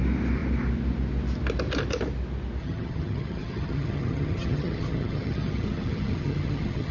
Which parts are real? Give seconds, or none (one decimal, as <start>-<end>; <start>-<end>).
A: 0.0-2.6